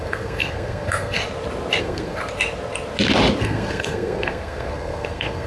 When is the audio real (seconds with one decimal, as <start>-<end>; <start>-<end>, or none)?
1.2-1.8; 2.2-3.4